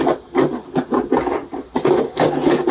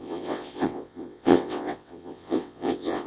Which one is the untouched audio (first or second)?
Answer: first